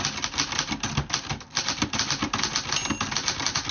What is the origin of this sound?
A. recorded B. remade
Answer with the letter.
A